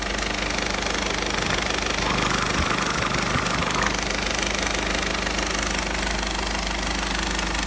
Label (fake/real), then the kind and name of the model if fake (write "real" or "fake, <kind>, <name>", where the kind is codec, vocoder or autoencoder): real